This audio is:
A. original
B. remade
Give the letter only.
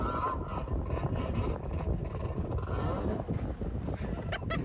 A